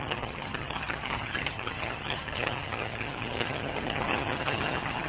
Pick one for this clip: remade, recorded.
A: remade